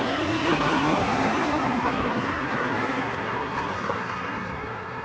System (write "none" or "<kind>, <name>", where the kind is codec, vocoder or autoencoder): codec, SNAC